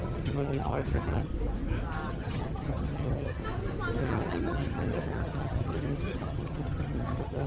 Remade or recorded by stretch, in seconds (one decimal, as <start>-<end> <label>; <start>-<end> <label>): 0.0-1.3 remade; 1.3-2.1 recorded; 2.1-3.4 remade; 3.4-4.0 recorded; 4.0-7.5 remade